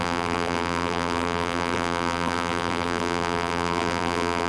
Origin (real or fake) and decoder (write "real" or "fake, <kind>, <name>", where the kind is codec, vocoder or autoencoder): fake, vocoder, BigVGAN v2